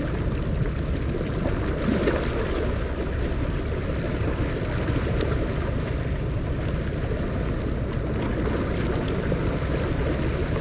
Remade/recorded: recorded